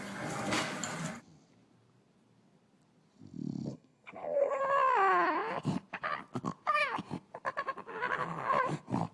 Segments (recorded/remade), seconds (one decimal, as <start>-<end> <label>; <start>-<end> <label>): 0.0-3.7 recorded; 3.7-4.6 remade; 4.6-9.1 recorded